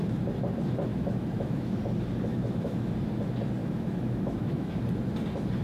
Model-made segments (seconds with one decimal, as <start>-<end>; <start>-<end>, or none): 0.9-1.8; 2.3-2.9; 3.6-4.8